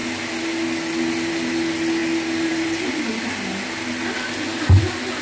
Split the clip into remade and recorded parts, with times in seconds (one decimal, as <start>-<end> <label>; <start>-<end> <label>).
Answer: 0.0-5.2 recorded